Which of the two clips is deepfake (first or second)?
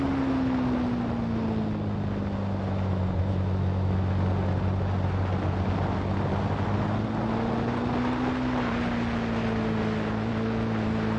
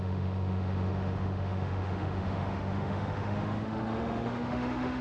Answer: second